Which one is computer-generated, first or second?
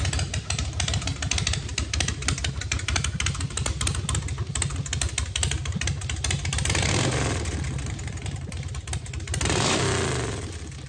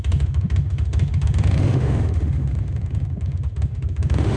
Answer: second